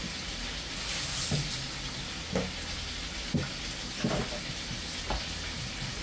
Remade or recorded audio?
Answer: recorded